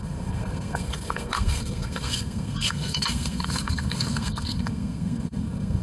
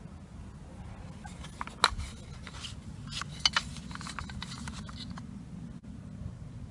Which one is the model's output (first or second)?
first